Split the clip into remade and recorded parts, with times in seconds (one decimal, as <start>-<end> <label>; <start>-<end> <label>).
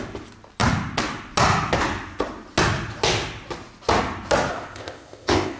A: 0.0-4.5 recorded; 4.5-5.6 remade